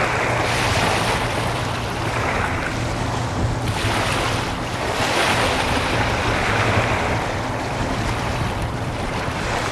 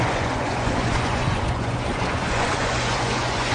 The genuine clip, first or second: first